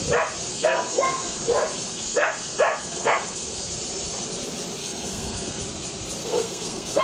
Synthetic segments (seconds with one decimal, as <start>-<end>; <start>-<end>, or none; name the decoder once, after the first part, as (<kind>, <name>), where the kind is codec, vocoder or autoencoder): 0.5-1.4 (codec, SNAC); 1.9-3.7; 4.8-5.6; 6.2-7.0